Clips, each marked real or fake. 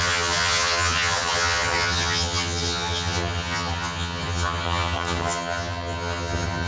fake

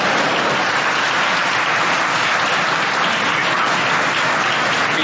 real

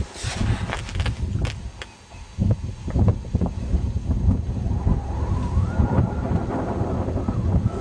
real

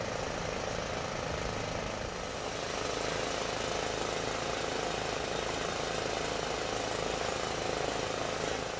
real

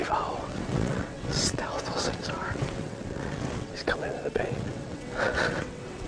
fake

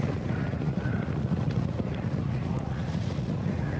fake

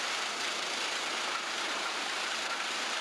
fake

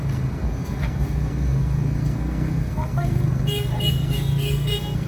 fake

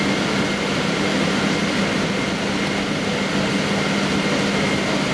real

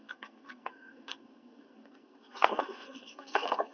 fake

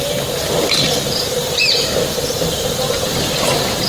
fake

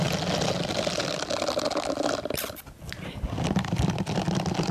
real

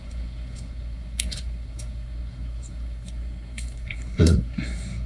fake